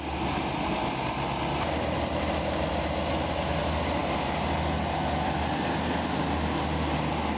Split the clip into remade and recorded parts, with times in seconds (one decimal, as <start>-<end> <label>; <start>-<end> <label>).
0.0-7.4 recorded